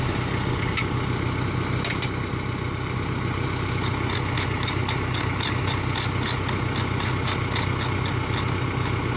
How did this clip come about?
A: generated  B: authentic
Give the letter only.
B